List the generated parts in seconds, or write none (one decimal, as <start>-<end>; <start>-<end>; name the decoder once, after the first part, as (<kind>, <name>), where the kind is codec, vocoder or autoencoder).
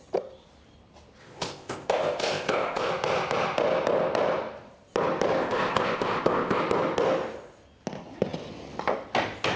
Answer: 1.2-2.9 (codec, ZipCodec); 5.4-6.6